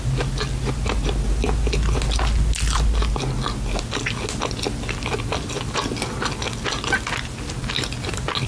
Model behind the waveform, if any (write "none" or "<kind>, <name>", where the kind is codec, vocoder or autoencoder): none